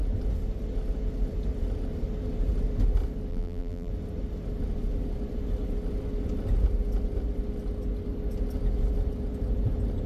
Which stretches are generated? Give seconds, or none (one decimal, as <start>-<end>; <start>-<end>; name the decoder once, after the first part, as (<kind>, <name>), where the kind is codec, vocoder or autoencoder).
3.3-3.9 (vocoder, BigVGAN v2)